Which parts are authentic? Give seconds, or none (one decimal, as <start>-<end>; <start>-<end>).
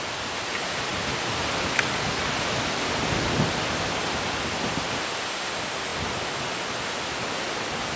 0.0-8.0